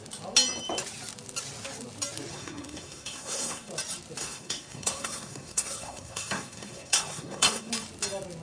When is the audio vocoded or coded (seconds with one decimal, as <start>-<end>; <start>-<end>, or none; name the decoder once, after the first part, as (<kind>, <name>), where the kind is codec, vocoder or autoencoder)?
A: 2.3-3.7 (codec, SNAC); 4.2-7.7